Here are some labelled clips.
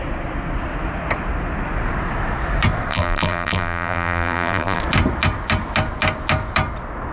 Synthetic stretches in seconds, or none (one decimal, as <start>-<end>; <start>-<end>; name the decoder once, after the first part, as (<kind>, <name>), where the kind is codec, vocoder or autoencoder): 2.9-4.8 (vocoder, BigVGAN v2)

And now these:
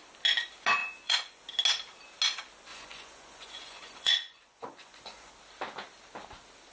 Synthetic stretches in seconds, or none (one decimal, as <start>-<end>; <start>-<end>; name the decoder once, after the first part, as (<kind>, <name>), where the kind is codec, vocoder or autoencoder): 0.8-1.4 (vocoder, Vocos); 2.7-5.3

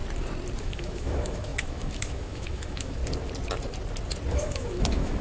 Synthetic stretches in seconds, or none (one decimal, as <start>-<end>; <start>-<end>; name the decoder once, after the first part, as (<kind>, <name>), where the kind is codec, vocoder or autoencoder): 0.6-3.0 (autoencoder, DAC-VAE); 4.3-5.2

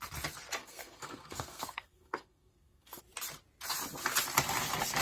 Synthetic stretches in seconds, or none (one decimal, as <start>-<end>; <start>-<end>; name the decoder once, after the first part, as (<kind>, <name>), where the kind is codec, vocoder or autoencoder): 0.6-3.0 (codec, SNAC)

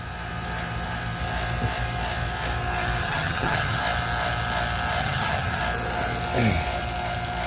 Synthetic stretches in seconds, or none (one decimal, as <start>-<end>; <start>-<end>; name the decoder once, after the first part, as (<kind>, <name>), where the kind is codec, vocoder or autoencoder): 3.0-3.8 (vocoder, HiFi-GAN); 5.0-5.6